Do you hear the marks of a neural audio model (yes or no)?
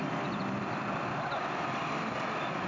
yes